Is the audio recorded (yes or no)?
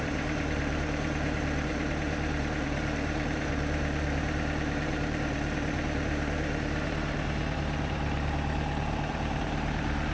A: no